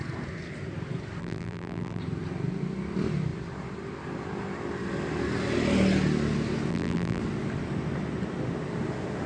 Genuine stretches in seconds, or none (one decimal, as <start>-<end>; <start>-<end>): 0.0-1.2; 2.0-6.7; 7.2-9.3